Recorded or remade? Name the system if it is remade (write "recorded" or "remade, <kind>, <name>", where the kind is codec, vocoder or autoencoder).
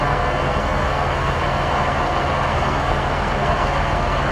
remade, codec, SNAC